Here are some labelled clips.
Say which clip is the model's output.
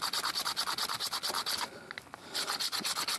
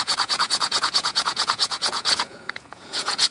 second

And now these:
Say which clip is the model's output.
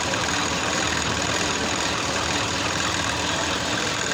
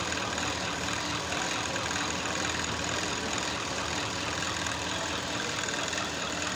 first